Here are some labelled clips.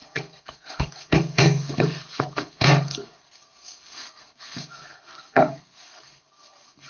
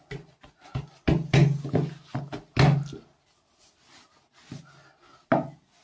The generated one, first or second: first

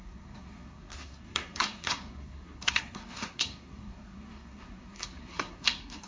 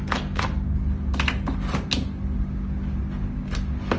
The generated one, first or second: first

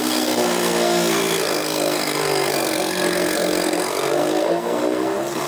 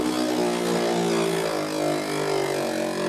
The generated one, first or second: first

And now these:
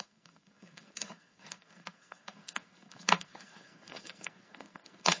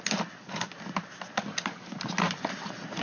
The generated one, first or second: first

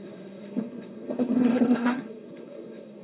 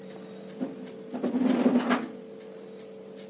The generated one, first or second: first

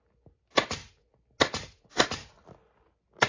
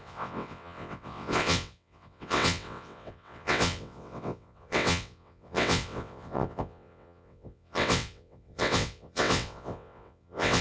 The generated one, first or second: second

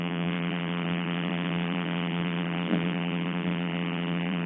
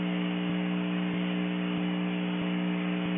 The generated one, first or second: first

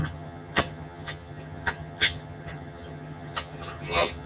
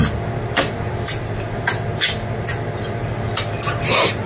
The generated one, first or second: first